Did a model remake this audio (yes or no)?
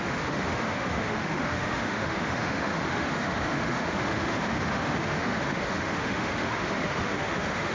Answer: yes